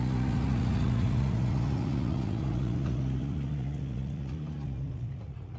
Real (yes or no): no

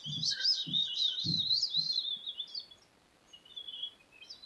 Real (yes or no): yes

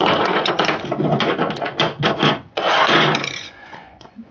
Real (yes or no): no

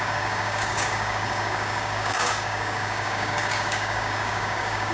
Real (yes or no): no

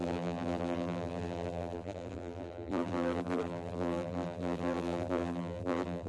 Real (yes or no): no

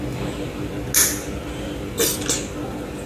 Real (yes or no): yes